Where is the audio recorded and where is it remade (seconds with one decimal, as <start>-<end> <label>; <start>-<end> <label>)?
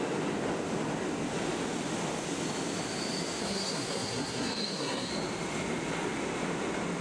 0.0-3.4 recorded; 3.4-5.1 remade; 5.1-7.0 recorded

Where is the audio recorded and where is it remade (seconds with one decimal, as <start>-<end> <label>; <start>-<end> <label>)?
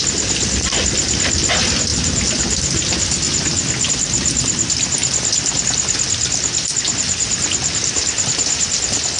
0.0-9.2 recorded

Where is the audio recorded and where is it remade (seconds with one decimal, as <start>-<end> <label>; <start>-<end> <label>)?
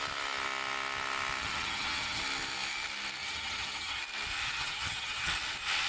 0.0-1.4 recorded; 1.4-2.2 remade; 2.2-3.2 recorded; 3.2-4.0 remade; 4.0-4.4 recorded; 4.4-5.3 remade; 5.3-5.9 recorded